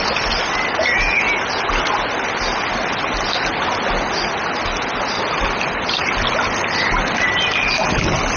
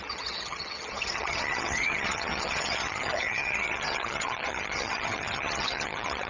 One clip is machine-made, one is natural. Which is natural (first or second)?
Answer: first